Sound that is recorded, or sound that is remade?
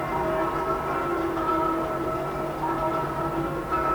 remade